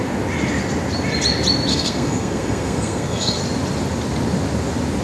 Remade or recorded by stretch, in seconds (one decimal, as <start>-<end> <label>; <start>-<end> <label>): 0.0-1.7 recorded; 1.7-3.4 remade; 3.4-5.0 recorded